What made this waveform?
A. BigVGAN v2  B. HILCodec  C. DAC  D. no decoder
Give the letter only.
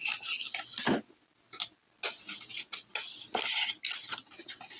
D